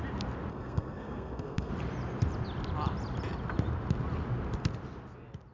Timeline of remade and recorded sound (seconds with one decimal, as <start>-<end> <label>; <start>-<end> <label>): 0.0-0.5 recorded; 0.5-1.7 remade; 1.7-5.5 recorded